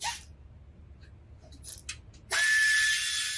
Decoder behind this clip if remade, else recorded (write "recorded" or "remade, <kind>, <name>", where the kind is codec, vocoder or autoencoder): recorded